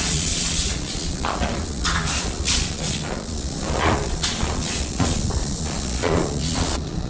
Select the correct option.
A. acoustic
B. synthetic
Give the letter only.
B